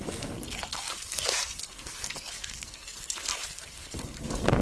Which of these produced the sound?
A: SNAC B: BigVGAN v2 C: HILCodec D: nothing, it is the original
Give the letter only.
A